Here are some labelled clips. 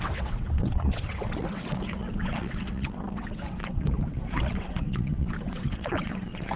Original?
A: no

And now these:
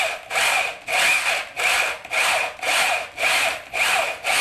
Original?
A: yes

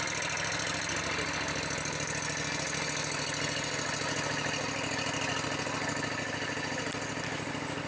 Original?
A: yes